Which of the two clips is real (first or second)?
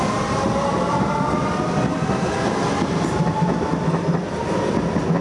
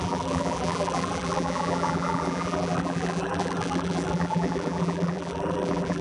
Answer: first